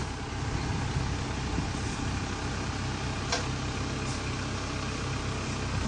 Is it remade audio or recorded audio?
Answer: recorded